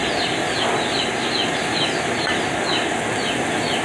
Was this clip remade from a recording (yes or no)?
no